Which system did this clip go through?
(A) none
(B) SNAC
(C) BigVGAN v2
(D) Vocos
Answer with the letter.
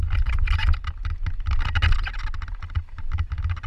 A